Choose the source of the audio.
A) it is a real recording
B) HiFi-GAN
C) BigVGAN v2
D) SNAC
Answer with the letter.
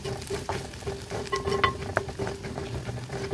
A